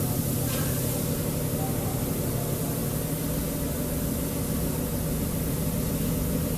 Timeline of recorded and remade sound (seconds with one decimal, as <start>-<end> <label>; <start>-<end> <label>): 0.0-6.6 recorded